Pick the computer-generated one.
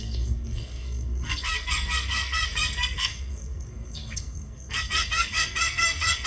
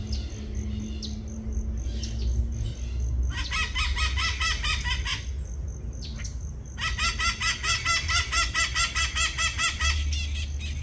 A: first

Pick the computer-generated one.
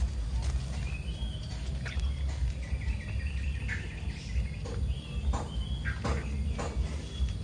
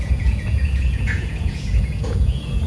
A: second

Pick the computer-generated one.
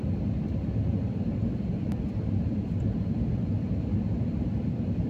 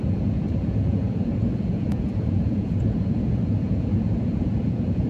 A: second